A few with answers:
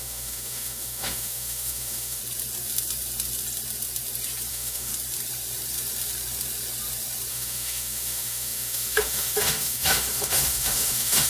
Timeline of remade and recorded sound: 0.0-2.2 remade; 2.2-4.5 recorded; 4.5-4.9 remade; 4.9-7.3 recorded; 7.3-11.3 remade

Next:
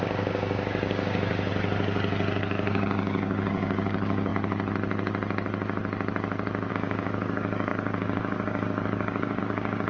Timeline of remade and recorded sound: 0.0-1.5 remade; 1.5-2.4 recorded; 2.4-4.3 remade; 4.3-6.7 recorded; 6.7-9.9 remade